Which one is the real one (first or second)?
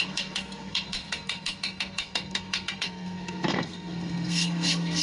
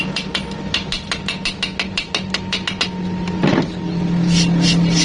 second